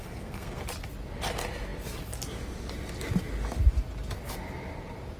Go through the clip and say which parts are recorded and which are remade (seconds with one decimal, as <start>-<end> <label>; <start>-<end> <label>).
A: 0.0-0.6 remade; 0.6-5.2 recorded